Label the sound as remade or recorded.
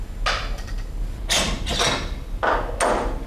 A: recorded